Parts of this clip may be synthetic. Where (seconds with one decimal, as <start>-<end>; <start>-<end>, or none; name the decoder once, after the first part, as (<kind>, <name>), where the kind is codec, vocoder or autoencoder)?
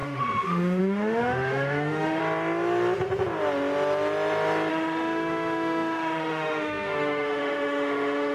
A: 0.0-2.2 (autoencoder, DAC-VAE); 4.7-8.3